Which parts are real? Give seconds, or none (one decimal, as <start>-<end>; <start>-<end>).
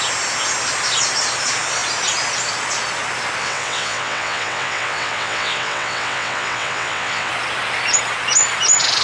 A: 0.0-3.4; 7.3-9.0